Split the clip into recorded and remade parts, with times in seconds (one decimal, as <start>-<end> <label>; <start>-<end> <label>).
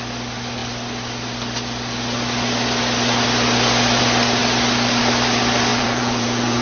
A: 0.0-5.7 recorded; 5.7-6.6 remade